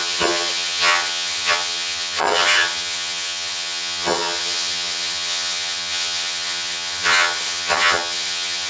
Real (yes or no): no